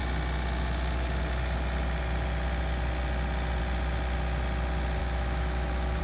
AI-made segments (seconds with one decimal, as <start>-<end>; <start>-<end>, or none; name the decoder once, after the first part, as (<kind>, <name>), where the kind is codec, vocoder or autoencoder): 5.0-6.0 (autoencoder, DAC-VAE)